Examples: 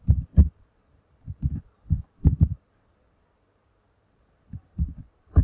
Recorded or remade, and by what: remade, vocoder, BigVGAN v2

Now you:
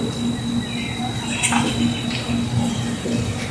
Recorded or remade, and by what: recorded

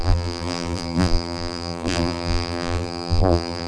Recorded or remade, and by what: remade, vocoder, BigVGAN v2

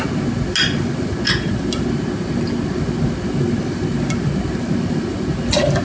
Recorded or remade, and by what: recorded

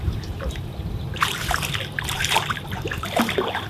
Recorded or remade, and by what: remade, vocoder, BigVGAN v2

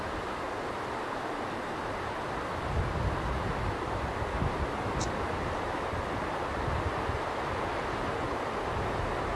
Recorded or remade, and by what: remade, vocoder, BigVGAN v2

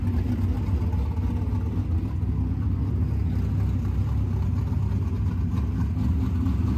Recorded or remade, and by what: recorded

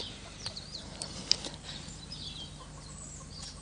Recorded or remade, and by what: remade, vocoder, BigVGAN v2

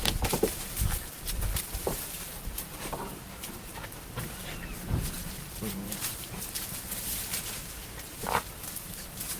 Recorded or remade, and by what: remade, vocoder, BigVGAN v2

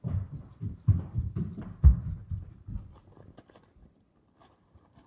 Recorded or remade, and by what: remade, vocoder, BigVGAN v2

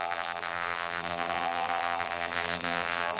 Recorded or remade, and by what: remade, vocoder, BigVGAN v2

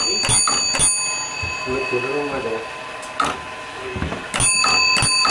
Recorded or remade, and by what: recorded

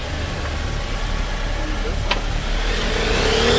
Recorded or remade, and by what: recorded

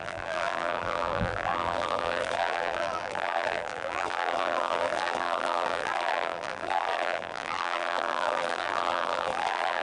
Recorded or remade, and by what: remade, vocoder, BigVGAN v2